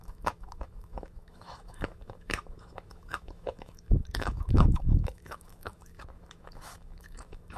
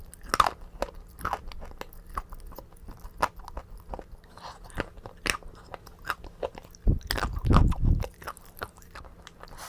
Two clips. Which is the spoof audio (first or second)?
first